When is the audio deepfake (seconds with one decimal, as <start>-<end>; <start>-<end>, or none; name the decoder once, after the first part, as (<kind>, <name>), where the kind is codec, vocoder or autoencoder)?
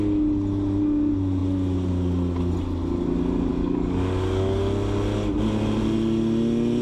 3.5-4.6 (codec, DAC)